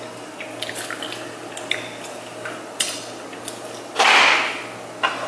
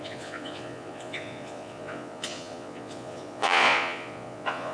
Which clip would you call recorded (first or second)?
first